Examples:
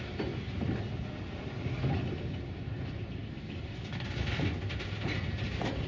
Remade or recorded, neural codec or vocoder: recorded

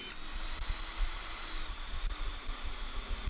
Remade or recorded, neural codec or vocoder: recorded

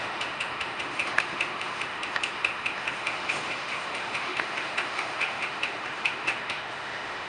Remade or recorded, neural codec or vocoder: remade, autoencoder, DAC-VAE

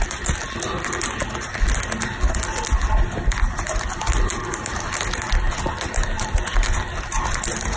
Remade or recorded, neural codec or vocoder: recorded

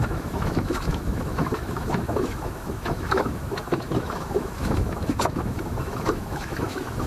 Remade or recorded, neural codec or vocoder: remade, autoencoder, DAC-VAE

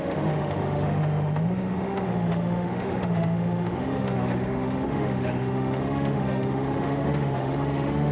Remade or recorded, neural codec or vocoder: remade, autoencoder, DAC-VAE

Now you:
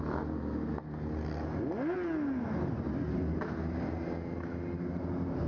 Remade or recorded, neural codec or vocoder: recorded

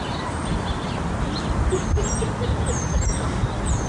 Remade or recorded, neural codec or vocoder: recorded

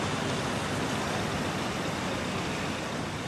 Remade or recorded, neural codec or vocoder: recorded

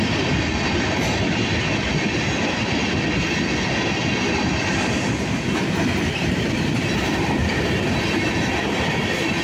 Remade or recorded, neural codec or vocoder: recorded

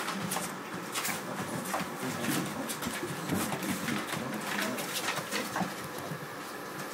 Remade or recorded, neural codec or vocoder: recorded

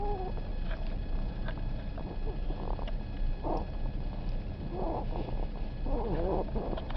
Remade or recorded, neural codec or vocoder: recorded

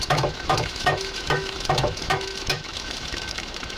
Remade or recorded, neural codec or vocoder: remade, autoencoder, DAC-VAE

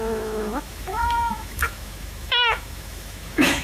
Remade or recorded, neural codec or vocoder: remade, autoencoder, DAC-VAE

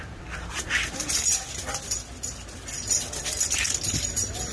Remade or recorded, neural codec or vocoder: recorded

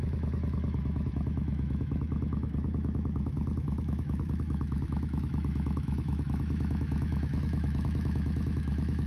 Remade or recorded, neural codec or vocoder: remade, autoencoder, DAC-VAE